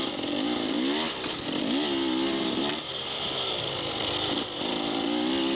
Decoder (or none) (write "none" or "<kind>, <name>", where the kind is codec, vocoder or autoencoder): none